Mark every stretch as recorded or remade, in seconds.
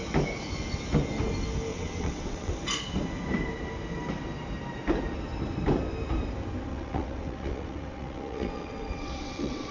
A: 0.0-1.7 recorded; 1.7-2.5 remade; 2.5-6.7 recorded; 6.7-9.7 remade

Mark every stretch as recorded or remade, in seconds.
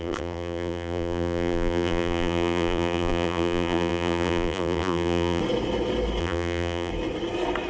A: 0.0-5.4 remade; 5.4-6.2 recorded; 6.2-6.9 remade; 6.9-7.7 recorded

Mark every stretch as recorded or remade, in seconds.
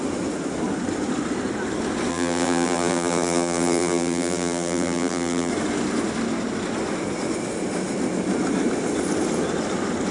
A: 0.0-2.1 recorded; 2.1-5.5 remade; 5.5-10.1 recorded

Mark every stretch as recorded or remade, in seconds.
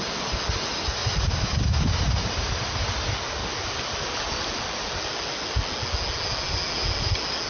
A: 0.0-7.5 recorded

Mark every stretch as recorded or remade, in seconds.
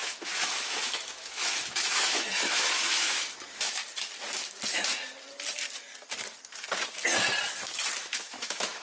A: 0.0-3.8 remade; 3.8-8.0 recorded; 8.0-8.8 remade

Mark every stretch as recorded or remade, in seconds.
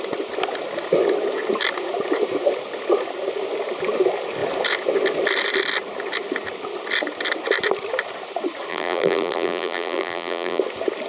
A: 0.0-8.7 recorded; 8.7-10.6 remade; 10.6-11.1 recorded